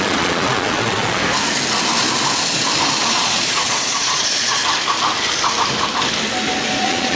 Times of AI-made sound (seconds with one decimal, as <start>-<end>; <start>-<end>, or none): 0.0-1.2; 3.1-4.6; 6.8-7.2